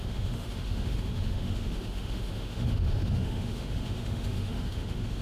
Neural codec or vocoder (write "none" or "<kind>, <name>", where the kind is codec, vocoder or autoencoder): autoencoder, DAC-VAE